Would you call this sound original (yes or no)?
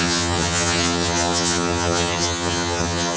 no